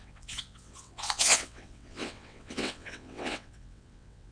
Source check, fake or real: fake